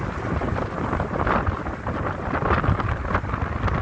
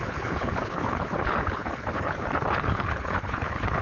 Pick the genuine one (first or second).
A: first